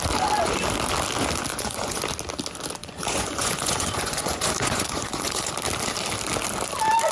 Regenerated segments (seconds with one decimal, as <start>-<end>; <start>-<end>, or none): 1.5-2.0; 2.8-5.5

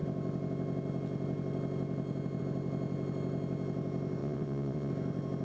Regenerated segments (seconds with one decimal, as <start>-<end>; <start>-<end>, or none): 4.2-4.9

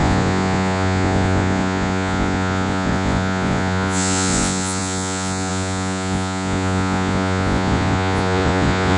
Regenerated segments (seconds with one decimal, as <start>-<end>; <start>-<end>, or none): 0.0-9.0